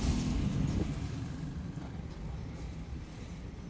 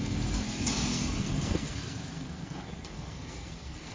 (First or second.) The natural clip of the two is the first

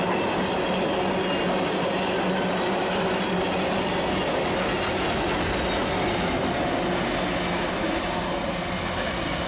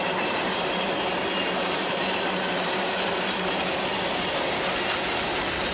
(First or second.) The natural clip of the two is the first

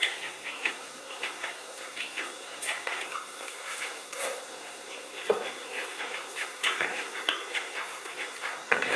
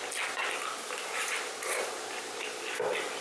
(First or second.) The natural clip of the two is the second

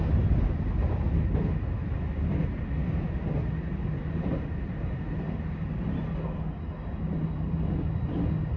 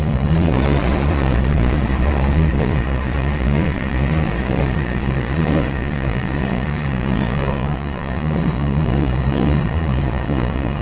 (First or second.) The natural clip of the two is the first